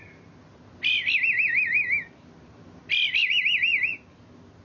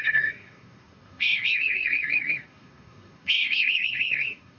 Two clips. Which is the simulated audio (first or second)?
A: second